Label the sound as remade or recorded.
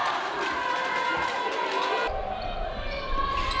recorded